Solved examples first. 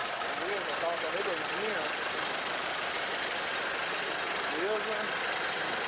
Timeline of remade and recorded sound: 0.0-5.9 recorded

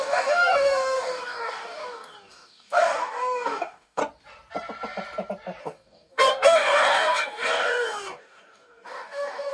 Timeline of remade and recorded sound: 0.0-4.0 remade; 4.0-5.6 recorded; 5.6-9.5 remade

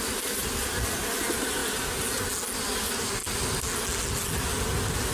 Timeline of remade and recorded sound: 0.0-5.1 recorded

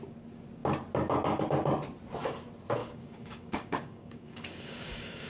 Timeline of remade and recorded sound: 0.0-2.8 recorded; 2.8-5.3 remade

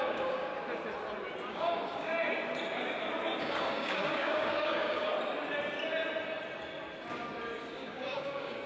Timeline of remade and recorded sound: 0.0-0.5 remade; 0.5-1.5 recorded; 1.5-2.1 remade; 2.1-3.4 recorded; 3.4-5.1 remade; 5.1-7.7 recorded; 7.7-8.7 remade

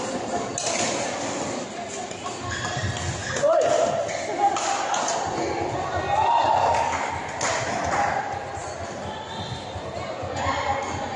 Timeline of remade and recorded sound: 0.0-6.6 recorded; 6.6-7.1 remade; 7.1-11.2 recorded

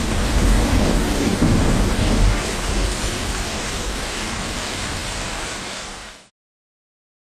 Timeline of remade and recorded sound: 0.0-7.3 remade